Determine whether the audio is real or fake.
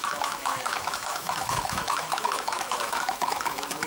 fake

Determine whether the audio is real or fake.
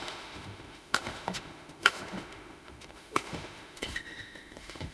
fake